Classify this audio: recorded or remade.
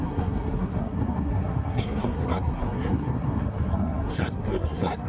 remade